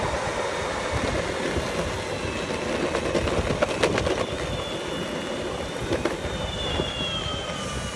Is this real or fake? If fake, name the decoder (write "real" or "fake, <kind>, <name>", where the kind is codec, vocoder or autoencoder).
real